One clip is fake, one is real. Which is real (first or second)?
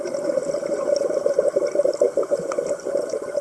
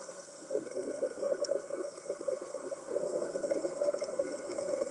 first